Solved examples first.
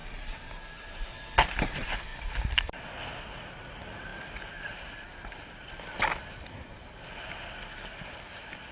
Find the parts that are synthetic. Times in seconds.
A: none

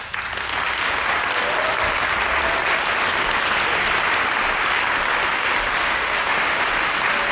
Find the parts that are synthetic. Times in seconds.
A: 5.8-6.7 (autoencoder, DAC-VAE)

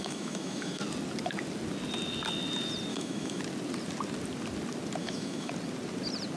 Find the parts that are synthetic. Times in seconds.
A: 0.0-0.8 (autoencoder, DAC-VAE); 2.9-3.4; 5.0-5.5

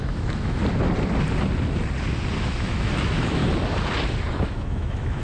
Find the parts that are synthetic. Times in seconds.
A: 0.0-0.6 (autoencoder, DAC-VAE); 2.4-3.4; 4.3-5.2

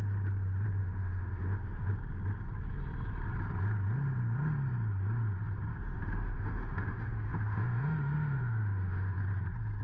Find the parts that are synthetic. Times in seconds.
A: 0.8-1.9 (autoencoder, DAC-VAE); 5.7-9.2

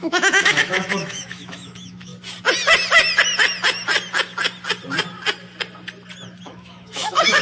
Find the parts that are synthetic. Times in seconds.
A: 0.0-2.1 (autoencoder, DAC-VAE); 6.4-7.4

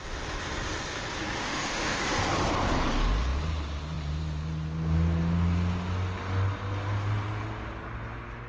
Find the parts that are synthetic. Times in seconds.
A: 1.4-2.0 (autoencoder, DAC-VAE)